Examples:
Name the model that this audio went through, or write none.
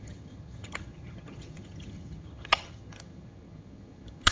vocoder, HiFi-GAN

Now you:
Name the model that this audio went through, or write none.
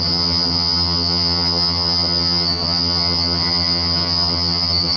vocoder, HiFi-GAN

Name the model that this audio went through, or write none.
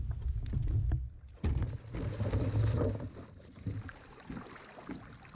none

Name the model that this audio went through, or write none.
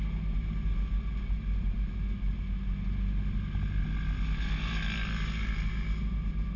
none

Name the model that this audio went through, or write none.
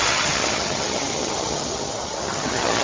vocoder, HiFi-GAN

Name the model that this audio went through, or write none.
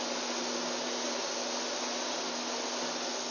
none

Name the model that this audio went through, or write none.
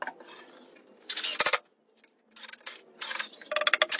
none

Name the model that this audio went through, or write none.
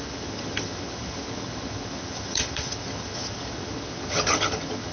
vocoder, HiFi-GAN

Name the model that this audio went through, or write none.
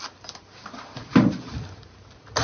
none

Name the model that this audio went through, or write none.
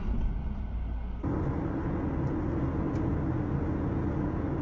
none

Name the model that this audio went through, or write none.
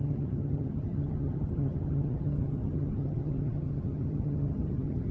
vocoder, HiFi-GAN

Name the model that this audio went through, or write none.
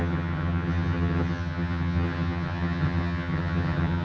vocoder, HiFi-GAN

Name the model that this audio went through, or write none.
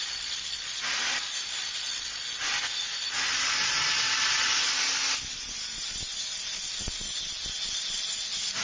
none